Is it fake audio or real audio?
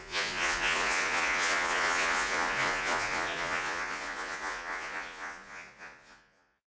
fake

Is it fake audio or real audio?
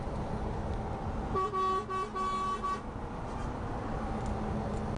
real